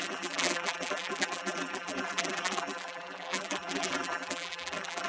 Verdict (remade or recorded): remade